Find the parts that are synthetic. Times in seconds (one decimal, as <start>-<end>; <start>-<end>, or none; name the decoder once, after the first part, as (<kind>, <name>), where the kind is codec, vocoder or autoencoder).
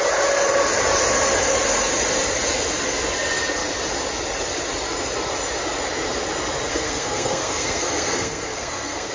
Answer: 6.7-9.1 (codec, SNAC)